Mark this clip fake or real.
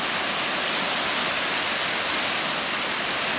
real